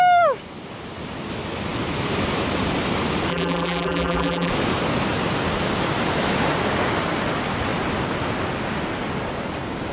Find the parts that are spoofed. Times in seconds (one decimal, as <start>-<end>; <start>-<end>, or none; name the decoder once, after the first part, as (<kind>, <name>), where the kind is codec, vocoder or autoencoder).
3.3-4.5 (vocoder, BigVGAN v2)